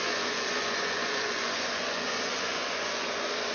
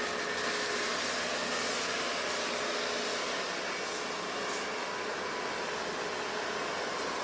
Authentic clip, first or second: second